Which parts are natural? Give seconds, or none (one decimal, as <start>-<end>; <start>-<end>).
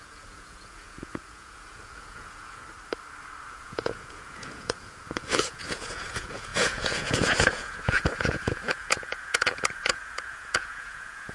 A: 2.6-3.5